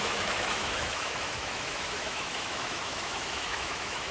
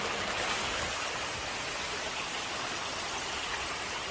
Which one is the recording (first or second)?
second